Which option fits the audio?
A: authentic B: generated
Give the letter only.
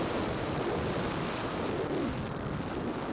A